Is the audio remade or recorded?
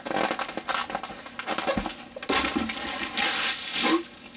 recorded